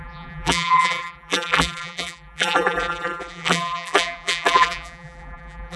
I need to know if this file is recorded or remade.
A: remade